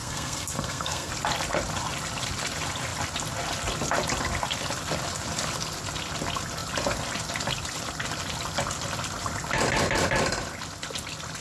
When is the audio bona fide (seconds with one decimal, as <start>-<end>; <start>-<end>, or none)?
1.1-11.4